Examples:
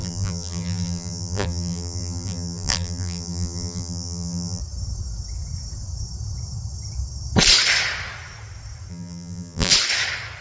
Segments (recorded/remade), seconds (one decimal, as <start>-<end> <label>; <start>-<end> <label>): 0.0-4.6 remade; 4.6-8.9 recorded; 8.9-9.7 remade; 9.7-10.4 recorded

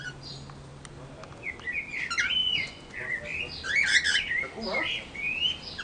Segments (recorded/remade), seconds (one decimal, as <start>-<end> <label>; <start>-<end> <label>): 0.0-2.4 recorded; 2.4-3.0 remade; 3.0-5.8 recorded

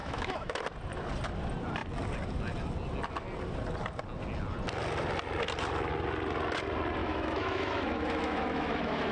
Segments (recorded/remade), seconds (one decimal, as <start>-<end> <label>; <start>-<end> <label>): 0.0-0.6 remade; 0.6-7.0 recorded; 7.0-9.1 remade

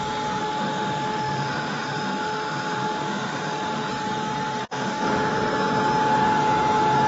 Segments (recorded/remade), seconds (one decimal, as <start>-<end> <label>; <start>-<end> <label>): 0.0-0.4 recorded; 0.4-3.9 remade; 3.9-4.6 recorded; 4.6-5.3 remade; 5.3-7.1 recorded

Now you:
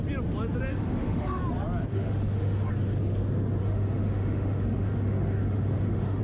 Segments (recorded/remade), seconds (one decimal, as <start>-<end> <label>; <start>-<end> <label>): 0.0-0.7 recorded; 0.7-1.4 remade; 1.4-1.9 recorded; 1.9-2.7 remade; 2.7-3.6 recorded; 3.6-6.2 remade

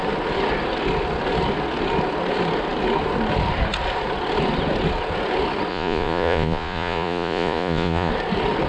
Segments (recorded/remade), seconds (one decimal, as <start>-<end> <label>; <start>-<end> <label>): 0.0-5.7 recorded; 5.7-8.1 remade; 8.1-8.7 recorded